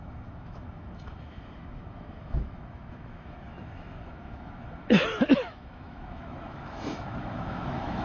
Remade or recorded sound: remade